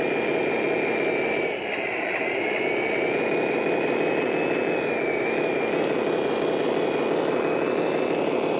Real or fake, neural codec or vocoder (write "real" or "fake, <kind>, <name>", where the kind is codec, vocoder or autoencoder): real